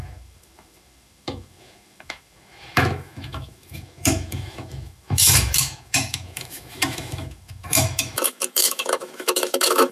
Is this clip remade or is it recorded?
remade